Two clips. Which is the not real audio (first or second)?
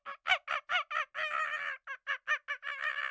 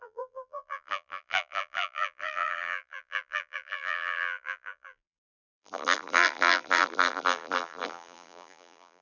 second